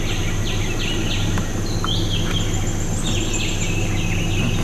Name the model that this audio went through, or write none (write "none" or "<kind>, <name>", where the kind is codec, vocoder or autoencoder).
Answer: none